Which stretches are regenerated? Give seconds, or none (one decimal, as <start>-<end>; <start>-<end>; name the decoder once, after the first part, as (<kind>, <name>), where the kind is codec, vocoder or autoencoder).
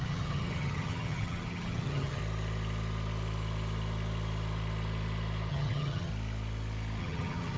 0.0-2.2 (vocoder, HiFi-GAN); 5.5-6.1; 7.0-7.6